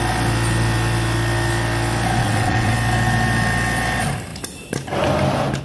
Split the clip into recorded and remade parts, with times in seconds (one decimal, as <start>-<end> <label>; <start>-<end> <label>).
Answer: 0.0-2.2 recorded; 2.2-2.7 remade; 2.7-5.6 recorded